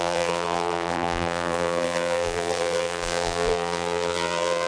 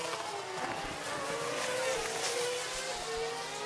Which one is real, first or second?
second